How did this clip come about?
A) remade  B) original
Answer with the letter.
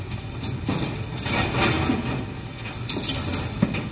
B